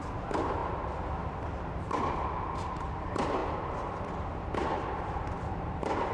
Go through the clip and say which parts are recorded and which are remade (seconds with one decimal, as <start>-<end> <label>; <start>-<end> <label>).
0.0-0.6 remade; 0.6-3.0 recorded; 3.0-6.1 remade